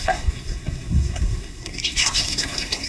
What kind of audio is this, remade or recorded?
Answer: remade